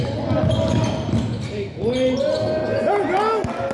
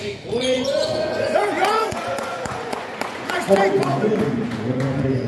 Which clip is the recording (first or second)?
first